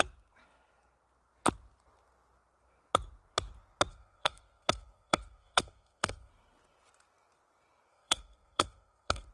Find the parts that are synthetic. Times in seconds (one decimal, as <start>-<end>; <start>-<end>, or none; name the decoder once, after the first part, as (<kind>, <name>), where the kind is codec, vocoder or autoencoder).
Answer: 3.9-6.3 (codec, SNAC); 7.9-9.3